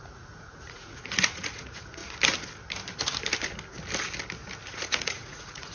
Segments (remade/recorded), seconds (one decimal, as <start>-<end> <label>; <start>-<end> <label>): 0.0-2.0 remade; 2.0-4.7 recorded; 4.7-5.7 remade